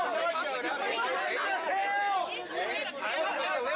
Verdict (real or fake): real